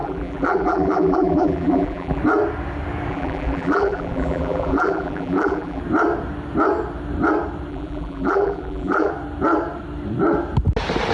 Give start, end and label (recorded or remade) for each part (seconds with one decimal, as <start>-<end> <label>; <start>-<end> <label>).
0.0-2.2 remade; 2.2-3.1 recorded; 3.1-5.8 remade; 5.8-7.7 recorded; 7.7-9.1 remade; 9.1-11.1 recorded